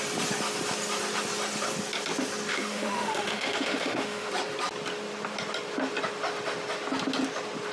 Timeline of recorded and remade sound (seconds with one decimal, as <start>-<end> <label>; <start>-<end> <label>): 0.0-2.5 recorded; 2.5-4.3 remade; 4.3-7.7 recorded